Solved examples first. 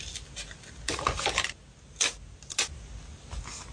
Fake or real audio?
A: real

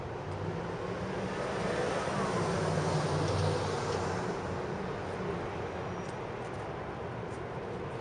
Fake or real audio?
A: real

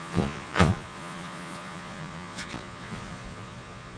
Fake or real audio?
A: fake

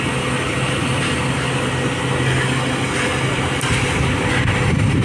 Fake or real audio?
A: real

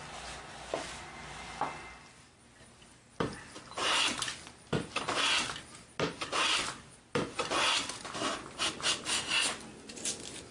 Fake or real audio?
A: real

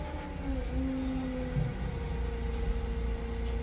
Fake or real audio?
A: real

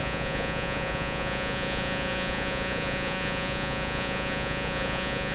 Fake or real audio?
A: fake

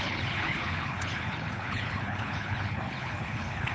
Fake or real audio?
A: fake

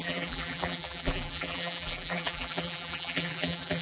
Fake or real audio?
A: fake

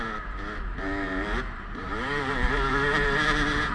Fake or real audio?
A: fake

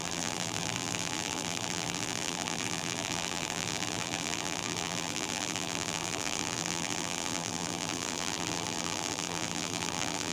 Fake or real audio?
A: fake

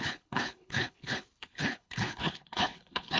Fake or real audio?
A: fake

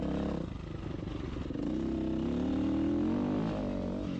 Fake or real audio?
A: real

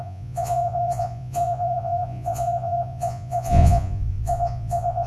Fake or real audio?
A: fake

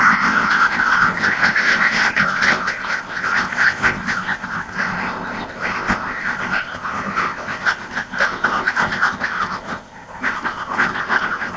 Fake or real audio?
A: fake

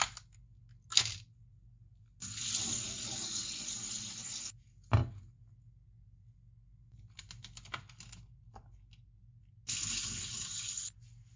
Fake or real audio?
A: real